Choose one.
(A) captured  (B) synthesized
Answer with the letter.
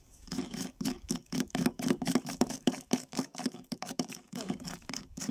B